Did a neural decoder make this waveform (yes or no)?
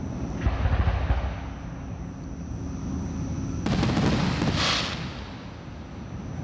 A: no